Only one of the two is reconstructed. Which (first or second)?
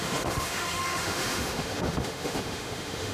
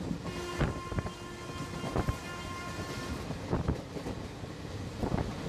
first